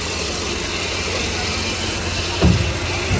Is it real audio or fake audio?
real